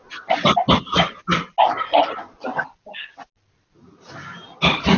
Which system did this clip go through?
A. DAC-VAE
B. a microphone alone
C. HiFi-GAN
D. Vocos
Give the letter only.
B